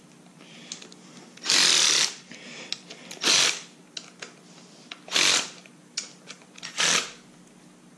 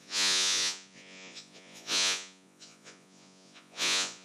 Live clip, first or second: first